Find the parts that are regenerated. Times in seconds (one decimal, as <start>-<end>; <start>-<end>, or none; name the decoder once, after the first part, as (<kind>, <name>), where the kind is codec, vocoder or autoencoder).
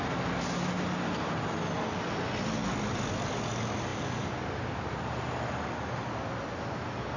none